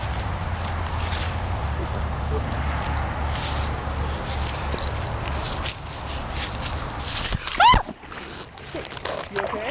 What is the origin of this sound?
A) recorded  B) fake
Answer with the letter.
A